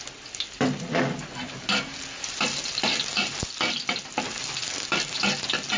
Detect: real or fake real